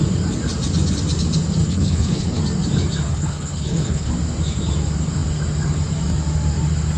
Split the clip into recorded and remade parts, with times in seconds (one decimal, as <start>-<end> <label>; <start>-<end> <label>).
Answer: 0.0-1.6 recorded; 1.6-2.4 remade; 2.4-3.1 recorded; 3.1-4.1 remade; 4.1-7.0 recorded